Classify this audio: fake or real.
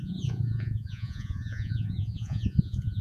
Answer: fake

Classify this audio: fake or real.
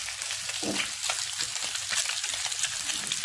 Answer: real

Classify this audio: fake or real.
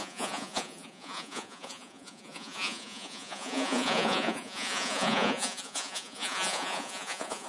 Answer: fake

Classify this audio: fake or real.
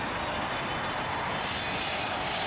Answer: real